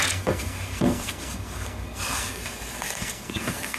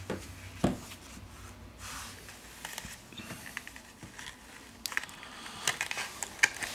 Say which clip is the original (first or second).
second